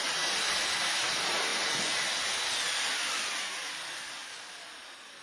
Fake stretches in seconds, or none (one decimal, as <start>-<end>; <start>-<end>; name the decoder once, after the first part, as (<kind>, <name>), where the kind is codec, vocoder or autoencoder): 1.5-2.0 (vocoder, Vocos)

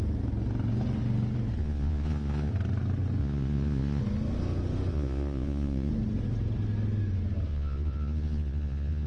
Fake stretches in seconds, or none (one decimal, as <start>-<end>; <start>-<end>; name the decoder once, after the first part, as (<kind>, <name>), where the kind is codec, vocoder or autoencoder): 1.6-2.5 (vocoder, Vocos); 3.2-4.0; 4.9-5.9; 7.5-9.1

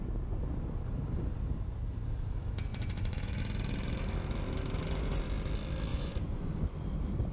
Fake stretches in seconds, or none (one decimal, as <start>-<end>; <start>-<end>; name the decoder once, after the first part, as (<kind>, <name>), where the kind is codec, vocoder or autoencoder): 2.7-3.4 (vocoder, Vocos); 5.9-6.6

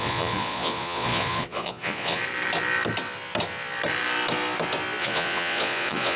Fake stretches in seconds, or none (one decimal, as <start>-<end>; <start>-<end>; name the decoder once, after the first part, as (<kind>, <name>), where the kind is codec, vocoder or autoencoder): 0.0-2.2 (vocoder, Vocos); 5.0-6.2

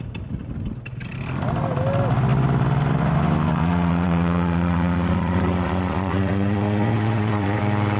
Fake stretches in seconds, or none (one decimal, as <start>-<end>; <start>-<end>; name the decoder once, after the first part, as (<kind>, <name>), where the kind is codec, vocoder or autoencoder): 3.5-7.6 (vocoder, Vocos)

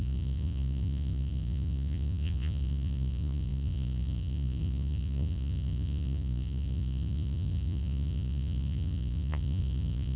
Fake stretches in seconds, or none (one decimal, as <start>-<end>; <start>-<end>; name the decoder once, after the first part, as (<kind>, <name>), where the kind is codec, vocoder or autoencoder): 0.0-10.2 (vocoder, Vocos)

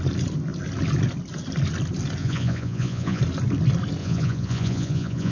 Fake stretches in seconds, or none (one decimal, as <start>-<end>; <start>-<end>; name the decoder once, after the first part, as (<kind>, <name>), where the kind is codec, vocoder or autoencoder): 2.2-3.2 (vocoder, Vocos); 4.0-5.3

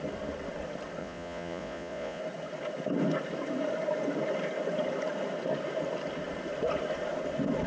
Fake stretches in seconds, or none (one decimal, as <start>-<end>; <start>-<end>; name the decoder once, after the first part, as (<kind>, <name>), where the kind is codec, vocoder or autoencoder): 1.0-2.2 (vocoder, Vocos)